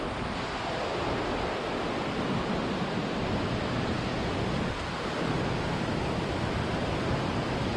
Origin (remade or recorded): recorded